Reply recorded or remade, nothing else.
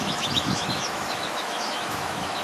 remade